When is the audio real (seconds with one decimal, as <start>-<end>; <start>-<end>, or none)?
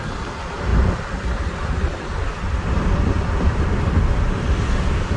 0.0-0.7; 3.8-5.2